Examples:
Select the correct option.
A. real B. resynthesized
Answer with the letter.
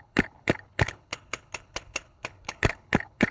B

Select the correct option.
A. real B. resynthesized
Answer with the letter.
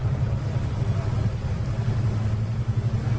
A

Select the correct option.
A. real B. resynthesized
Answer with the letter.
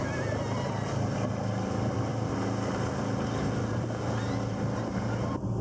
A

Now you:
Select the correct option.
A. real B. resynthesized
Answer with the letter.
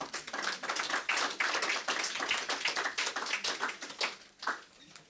A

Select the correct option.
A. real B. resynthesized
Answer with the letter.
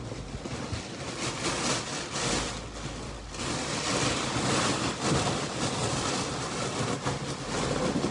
A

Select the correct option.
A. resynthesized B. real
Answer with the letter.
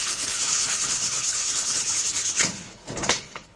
A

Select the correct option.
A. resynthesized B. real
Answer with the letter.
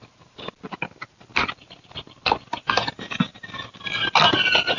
B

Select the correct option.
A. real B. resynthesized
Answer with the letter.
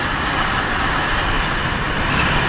A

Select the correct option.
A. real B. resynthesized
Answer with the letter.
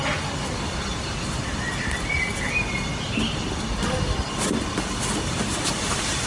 A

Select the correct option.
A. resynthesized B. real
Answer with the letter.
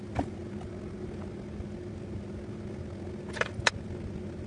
B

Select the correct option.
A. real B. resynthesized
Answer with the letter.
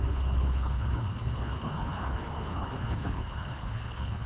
B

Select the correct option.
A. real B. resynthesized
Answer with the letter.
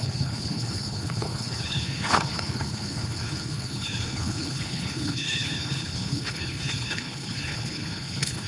B